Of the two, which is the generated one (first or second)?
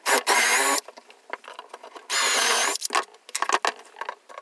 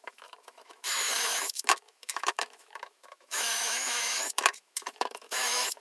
second